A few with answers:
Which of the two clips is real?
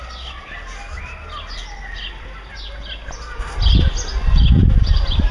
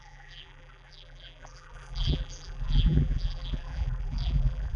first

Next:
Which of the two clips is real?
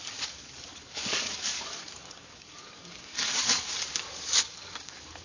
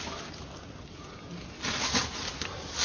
second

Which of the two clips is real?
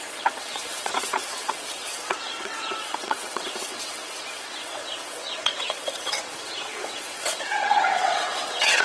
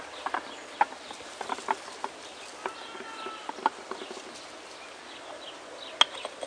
second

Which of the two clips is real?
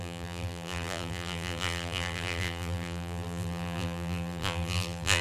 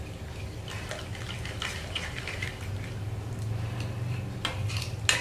second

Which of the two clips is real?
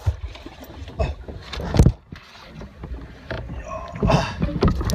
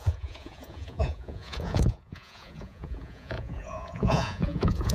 first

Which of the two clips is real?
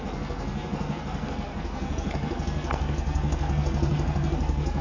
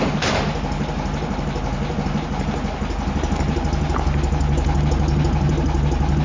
second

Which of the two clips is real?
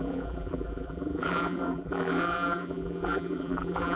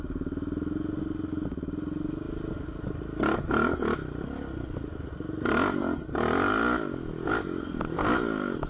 second